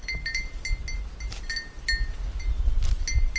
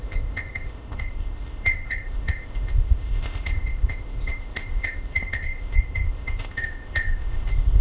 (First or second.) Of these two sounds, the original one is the first